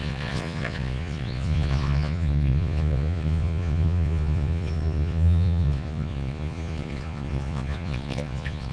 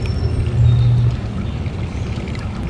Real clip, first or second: second